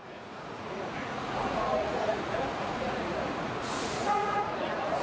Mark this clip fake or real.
fake